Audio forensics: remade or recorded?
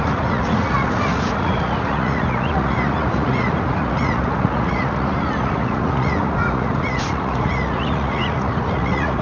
remade